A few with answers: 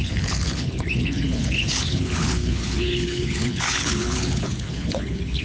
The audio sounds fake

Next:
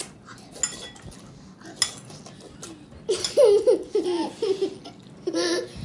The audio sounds real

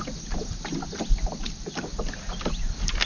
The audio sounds real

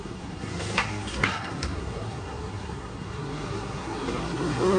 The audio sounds fake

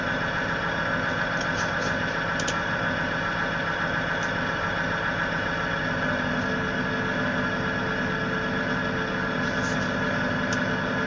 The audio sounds real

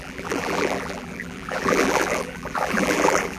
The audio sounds fake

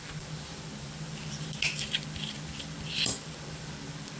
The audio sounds fake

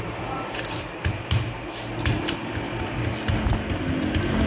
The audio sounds real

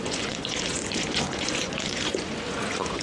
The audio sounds fake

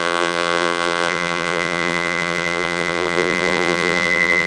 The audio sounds fake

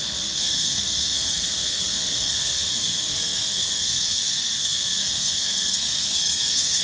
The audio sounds fake